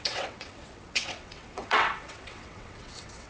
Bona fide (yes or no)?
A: no